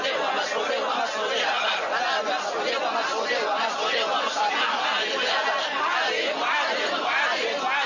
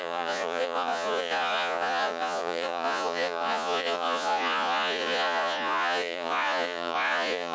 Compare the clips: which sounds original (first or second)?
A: first